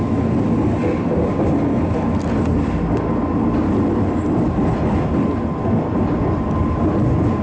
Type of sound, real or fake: real